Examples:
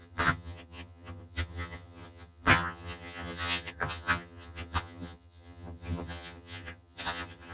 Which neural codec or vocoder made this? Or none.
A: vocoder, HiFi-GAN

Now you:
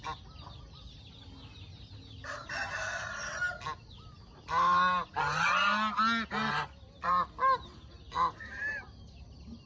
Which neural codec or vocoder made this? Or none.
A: none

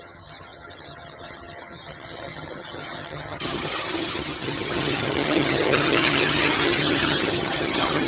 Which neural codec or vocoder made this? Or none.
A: vocoder, HiFi-GAN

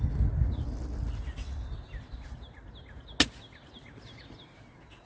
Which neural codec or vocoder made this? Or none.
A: none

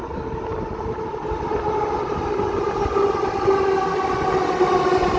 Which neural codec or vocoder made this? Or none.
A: none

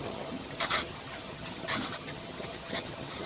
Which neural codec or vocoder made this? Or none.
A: vocoder, HiFi-GAN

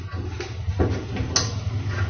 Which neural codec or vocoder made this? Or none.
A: none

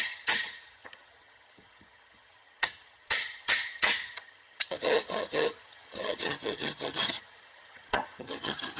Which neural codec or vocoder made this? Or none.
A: vocoder, HiFi-GAN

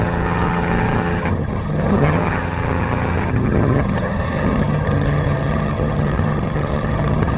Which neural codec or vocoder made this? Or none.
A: vocoder, HiFi-GAN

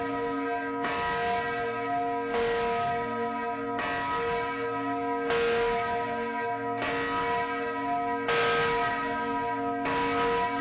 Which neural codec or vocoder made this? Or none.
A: none